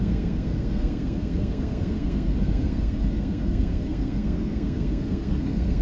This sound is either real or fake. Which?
fake